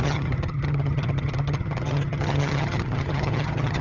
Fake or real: fake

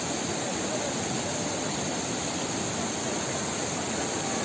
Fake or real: real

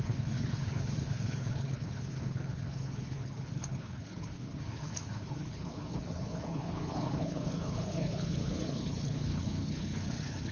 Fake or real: fake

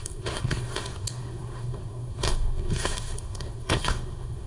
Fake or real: fake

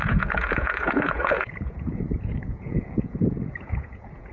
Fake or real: fake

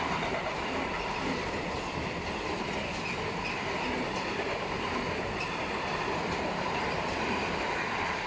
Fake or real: real